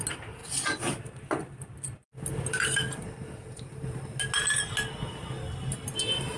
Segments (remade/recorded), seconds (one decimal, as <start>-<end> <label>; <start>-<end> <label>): 0.0-6.4 recorded